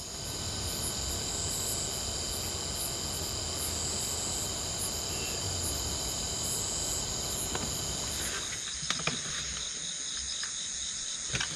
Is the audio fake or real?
real